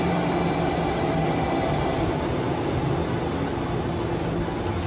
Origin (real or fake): real